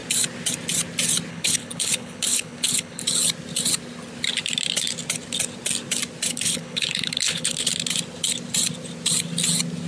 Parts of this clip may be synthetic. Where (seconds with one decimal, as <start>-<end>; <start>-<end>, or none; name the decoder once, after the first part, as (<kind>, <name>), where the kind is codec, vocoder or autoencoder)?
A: 1.3-3.0 (codec, HILCodec); 6.3-7.7